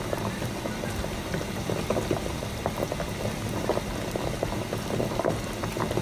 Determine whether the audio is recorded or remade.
recorded